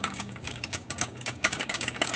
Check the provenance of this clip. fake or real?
fake